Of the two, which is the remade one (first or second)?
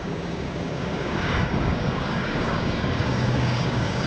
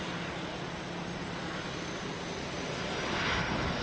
first